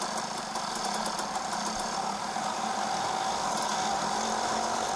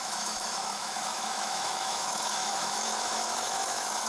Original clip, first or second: first